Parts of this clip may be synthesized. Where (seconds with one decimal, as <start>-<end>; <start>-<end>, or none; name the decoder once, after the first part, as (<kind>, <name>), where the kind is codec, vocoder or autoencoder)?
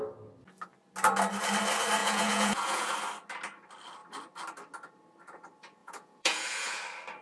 2.0-2.9 (vocoder, Vocos); 5.8-6.8